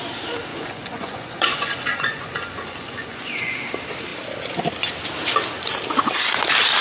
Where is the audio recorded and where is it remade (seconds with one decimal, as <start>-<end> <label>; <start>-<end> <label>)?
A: 0.0-0.5 recorded; 0.5-3.6 remade; 3.6-6.8 recorded